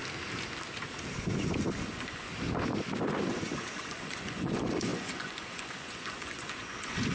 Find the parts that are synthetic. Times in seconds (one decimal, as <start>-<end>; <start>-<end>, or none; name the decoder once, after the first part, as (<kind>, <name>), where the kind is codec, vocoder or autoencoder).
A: 1.8-2.3 (vocoder, Vocos); 3.3-7.1